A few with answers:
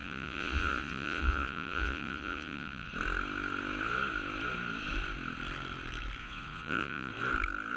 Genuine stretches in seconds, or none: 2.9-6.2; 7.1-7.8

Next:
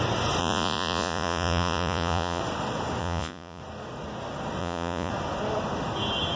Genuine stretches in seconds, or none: 0.0-0.4; 2.4-3.0; 3.6-4.6; 5.1-6.4

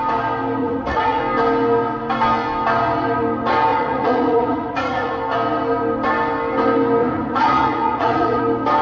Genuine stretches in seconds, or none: 0.0-0.6; 1.2-3.7; 5.1-7.0; 8.4-8.8

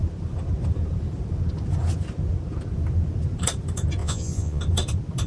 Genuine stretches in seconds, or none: 0.0-4.0; 4.6-5.3

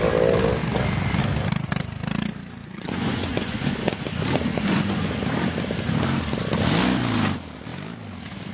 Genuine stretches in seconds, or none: 0.0-2.6; 4.0-4.5; 5.1-8.5